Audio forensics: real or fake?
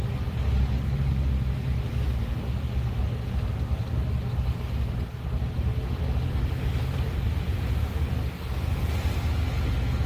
real